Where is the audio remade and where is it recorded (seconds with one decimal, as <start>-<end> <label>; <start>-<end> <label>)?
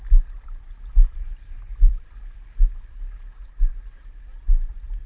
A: 0.0-5.1 recorded